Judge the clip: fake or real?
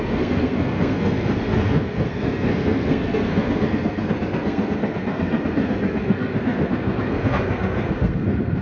fake